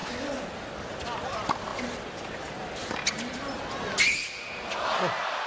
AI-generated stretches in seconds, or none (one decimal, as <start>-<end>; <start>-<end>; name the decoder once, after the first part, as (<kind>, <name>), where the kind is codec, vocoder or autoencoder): none